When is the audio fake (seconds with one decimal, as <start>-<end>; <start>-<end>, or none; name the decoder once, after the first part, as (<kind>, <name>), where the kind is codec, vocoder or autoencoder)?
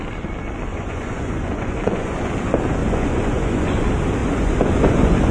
0.7-2.3 (vocoder, Vocos); 2.8-3.8; 4.2-5.3